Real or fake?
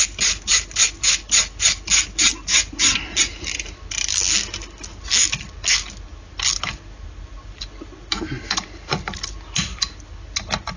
real